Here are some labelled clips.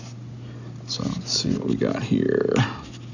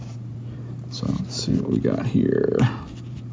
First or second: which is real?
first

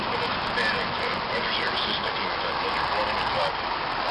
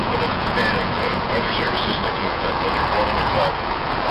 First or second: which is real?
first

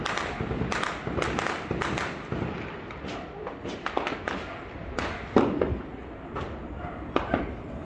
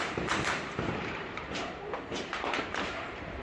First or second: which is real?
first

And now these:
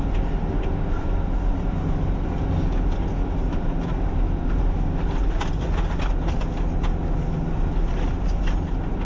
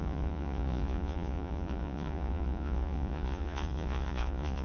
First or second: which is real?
first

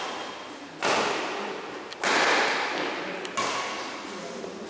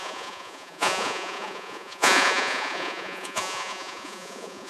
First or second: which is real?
first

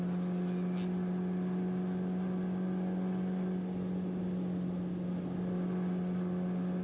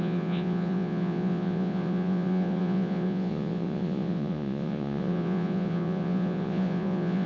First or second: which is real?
first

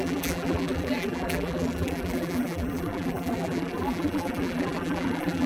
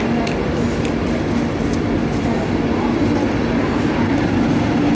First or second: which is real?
second